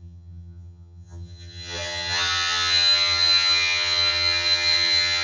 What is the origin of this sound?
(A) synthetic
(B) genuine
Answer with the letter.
A